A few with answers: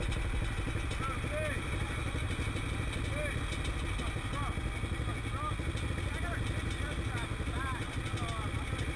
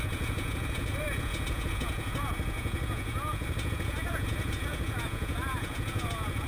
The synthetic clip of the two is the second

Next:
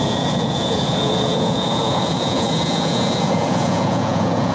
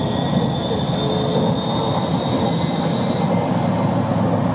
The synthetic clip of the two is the first